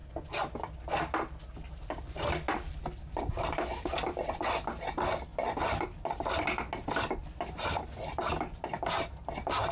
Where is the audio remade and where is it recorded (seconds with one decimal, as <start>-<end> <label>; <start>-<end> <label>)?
0.0-9.7 recorded